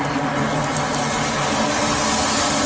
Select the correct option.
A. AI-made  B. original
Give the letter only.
B